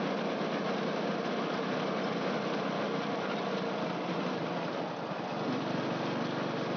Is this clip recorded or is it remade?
recorded